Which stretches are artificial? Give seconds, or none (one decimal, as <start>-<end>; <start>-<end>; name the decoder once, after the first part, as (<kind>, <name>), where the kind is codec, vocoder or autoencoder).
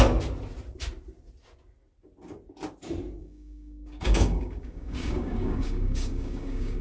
3.2-6.8 (codec, DAC)